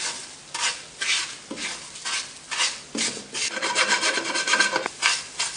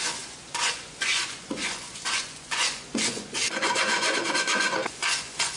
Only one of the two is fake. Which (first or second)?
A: second